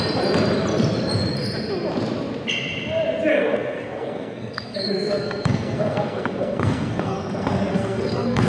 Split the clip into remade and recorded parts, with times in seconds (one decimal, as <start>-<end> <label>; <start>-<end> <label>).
0.0-3.3 recorded; 3.3-8.5 remade